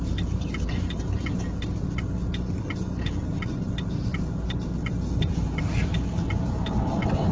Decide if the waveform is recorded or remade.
recorded